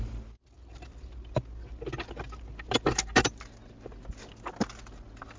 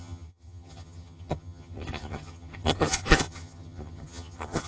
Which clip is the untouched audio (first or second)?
first